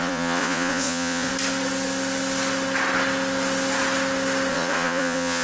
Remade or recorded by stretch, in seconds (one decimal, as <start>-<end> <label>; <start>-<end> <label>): 0.0-1.3 remade; 1.3-4.5 recorded; 4.5-5.4 remade